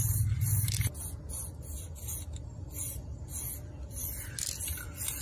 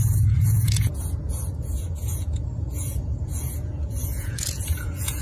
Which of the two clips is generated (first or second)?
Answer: second